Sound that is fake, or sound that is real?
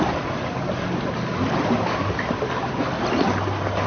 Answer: real